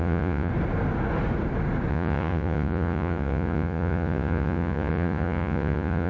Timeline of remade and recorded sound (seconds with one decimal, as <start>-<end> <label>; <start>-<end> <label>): 0.0-0.5 remade; 0.5-1.9 recorded; 1.9-6.1 remade